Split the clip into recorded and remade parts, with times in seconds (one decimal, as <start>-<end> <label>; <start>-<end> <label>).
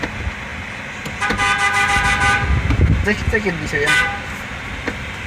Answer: 0.0-5.3 recorded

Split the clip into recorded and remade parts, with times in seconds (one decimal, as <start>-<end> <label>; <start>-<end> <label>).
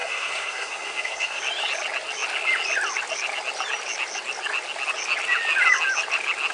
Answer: 0.0-1.4 remade; 1.4-6.5 recorded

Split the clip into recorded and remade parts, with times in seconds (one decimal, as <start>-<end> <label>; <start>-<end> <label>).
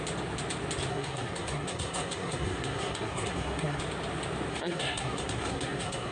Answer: 0.0-0.9 recorded; 0.9-3.8 remade; 3.8-4.5 recorded; 4.5-6.1 remade